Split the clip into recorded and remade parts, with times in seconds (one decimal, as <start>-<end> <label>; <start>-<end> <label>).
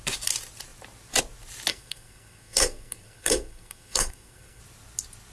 0.0-1.7 recorded; 1.7-4.6 remade; 4.6-5.3 recorded